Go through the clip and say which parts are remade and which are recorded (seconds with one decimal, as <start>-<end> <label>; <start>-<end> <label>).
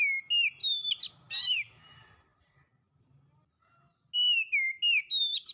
0.0-0.6 recorded; 0.6-3.2 remade; 3.2-5.5 recorded